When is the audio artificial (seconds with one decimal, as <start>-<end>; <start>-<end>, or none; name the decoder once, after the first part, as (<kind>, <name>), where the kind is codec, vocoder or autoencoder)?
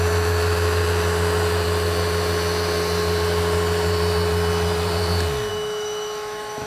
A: 5.5-6.7 (autoencoder, DAC-VAE)